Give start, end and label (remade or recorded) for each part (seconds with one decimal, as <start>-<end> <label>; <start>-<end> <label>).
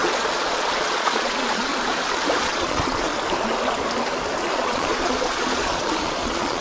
0.0-1.7 remade; 1.7-2.4 recorded; 2.4-3.1 remade; 3.1-4.5 recorded; 4.5-6.6 remade